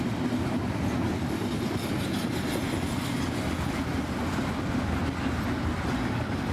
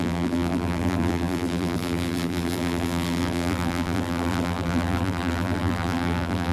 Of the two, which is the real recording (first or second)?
first